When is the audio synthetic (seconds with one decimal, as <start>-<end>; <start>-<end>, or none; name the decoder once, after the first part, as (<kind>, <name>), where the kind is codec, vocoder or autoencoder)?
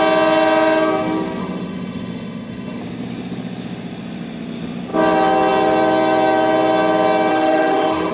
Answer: 1.4-2.8 (autoencoder, DAC-VAE); 7.3-8.1